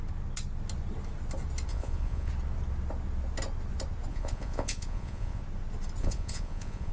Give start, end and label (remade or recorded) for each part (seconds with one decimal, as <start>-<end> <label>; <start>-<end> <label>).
0.0-1.7 recorded; 1.7-2.3 remade; 2.3-4.1 recorded; 4.1-5.4 remade; 5.4-6.0 recorded; 6.0-6.9 remade